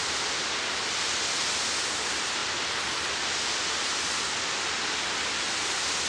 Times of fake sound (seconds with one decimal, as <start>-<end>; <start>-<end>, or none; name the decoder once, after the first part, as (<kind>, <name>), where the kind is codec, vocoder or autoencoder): none